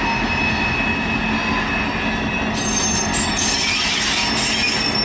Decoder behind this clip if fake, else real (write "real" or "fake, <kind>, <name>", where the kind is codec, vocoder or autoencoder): real